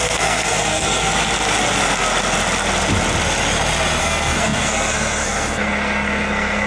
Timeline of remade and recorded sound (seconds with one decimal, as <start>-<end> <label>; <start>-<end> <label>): 0.0-1.1 remade; 1.1-4.0 recorded; 4.0-6.7 remade